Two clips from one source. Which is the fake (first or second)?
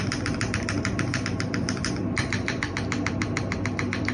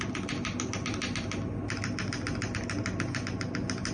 first